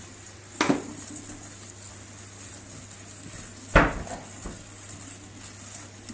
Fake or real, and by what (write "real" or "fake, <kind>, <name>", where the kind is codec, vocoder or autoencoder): real